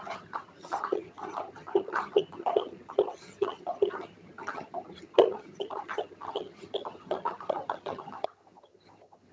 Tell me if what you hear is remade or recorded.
remade